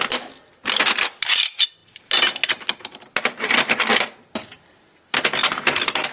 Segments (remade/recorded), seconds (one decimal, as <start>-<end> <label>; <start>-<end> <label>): 0.0-6.1 recorded

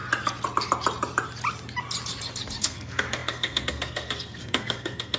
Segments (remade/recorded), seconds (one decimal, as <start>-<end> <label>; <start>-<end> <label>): 0.0-2.6 recorded; 2.6-5.2 remade

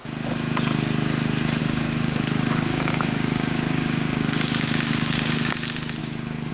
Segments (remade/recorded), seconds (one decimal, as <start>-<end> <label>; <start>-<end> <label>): 0.0-1.6 recorded; 1.6-5.5 remade; 5.5-6.0 recorded; 6.0-6.5 remade

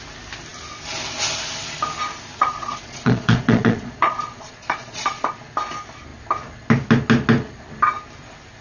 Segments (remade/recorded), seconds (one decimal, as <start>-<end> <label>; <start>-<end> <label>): 0.0-2.4 recorded; 2.4-5.3 remade; 5.3-8.6 recorded